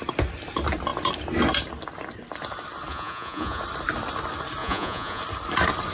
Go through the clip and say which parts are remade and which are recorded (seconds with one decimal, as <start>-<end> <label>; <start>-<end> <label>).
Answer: 0.0-2.9 recorded; 2.9-3.6 remade; 3.6-4.6 recorded; 4.6-5.2 remade; 5.2-5.9 recorded